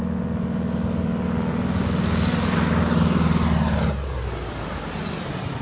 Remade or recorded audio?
recorded